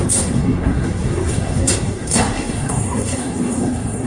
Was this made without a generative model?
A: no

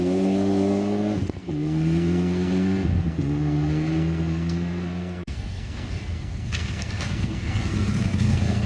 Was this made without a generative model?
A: no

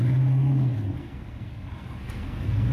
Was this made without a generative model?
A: no